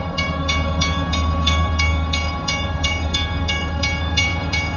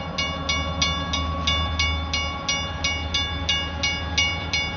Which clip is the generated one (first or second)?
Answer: first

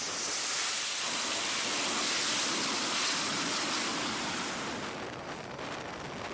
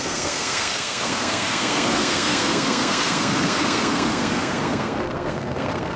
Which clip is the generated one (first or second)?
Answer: second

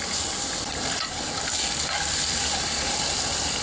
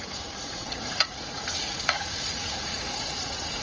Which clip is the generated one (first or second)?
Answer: second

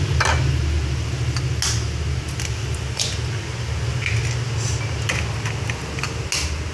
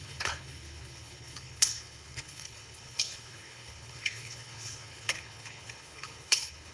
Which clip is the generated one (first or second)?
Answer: second